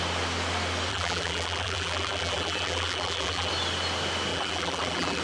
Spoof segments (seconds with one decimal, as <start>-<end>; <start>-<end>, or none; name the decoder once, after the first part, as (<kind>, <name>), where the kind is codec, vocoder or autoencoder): 0.9-3.5 (vocoder, BigVGAN v2); 4.3-5.2